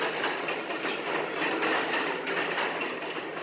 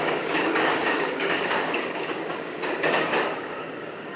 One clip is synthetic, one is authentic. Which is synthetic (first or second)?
second